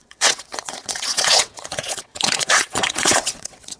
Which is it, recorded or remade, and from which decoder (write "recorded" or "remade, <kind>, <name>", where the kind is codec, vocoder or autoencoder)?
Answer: remade, vocoder, WaveNeXt